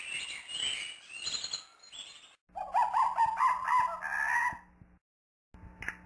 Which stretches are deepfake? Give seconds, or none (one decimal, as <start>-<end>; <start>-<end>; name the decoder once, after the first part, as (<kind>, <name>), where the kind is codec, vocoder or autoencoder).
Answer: none